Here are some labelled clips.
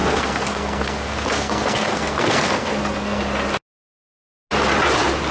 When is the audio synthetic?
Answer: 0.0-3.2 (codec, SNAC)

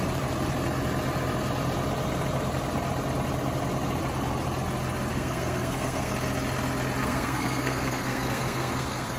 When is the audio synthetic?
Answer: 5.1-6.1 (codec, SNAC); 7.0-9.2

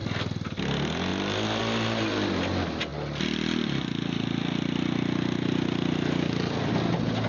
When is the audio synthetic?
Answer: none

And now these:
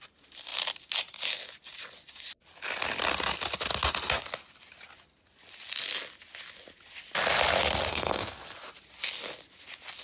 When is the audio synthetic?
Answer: 7.9-8.4 (codec, SNAC)

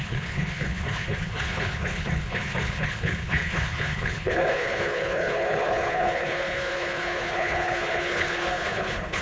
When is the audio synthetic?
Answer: 0.0-9.2 (codec, HILCodec)

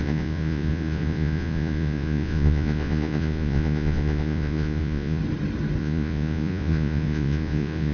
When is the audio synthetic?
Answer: 0.0-5.2 (vocoder, Vocos); 5.8-7.9